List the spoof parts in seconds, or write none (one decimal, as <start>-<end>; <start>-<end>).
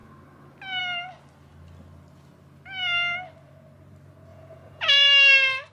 4.3-5.1